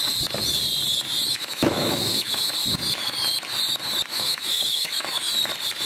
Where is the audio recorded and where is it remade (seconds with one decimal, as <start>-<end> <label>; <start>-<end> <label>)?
0.0-1.3 recorded; 1.3-2.5 remade; 2.5-4.1 recorded; 4.1-5.3 remade; 5.3-5.9 recorded

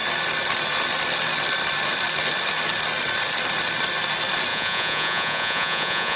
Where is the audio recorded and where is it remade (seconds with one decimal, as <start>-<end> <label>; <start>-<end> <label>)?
0.0-4.5 recorded; 4.5-6.2 remade

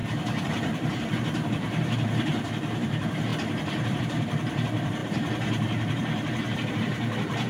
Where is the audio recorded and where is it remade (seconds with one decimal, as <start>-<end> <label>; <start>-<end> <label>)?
0.0-7.5 remade

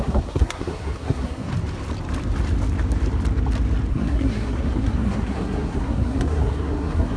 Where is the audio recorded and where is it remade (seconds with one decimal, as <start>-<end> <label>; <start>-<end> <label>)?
0.0-1.5 remade; 1.5-3.9 recorded; 3.9-7.2 remade

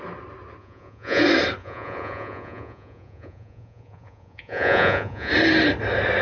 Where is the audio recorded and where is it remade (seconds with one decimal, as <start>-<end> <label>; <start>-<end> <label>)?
0.0-0.6 recorded; 0.6-1.2 remade; 1.2-1.6 recorded; 1.6-5.3 remade; 5.3-6.2 recorded

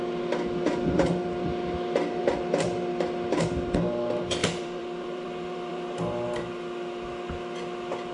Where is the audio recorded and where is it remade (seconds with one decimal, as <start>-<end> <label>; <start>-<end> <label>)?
0.0-4.4 recorded; 4.4-6.5 remade; 6.5-8.1 recorded

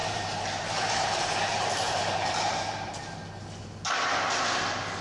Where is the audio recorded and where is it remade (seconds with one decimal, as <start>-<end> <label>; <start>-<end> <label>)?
0.0-2.9 remade; 2.9-5.0 recorded

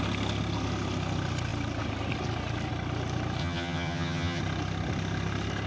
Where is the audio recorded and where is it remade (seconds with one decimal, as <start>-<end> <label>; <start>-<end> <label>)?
0.0-3.4 recorded; 3.4-4.4 remade; 4.4-5.7 recorded